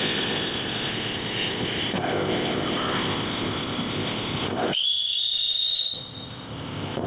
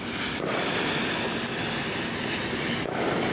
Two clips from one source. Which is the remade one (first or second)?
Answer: first